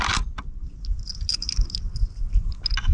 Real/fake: real